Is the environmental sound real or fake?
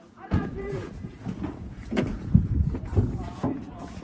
fake